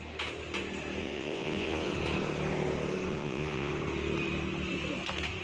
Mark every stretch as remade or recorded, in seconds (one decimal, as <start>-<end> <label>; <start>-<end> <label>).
0.0-1.0 recorded; 1.0-1.9 remade; 1.9-3.1 recorded; 3.1-3.7 remade; 3.7-5.4 recorded